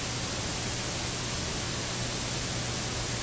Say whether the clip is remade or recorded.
recorded